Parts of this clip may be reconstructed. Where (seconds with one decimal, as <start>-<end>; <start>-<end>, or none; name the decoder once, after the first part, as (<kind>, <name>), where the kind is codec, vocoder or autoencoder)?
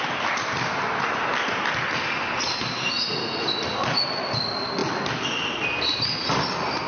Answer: none